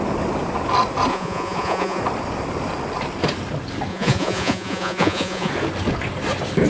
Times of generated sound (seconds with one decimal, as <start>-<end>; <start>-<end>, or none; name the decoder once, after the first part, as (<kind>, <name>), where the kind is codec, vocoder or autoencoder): 1.1-2.0 (vocoder, Vocos); 3.9-5.5